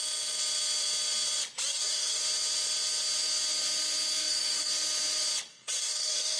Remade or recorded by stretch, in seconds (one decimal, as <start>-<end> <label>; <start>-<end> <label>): 0.0-1.7 recorded; 1.7-2.2 remade; 2.2-4.2 recorded; 4.2-4.7 remade; 4.7-5.5 recorded; 5.5-6.4 remade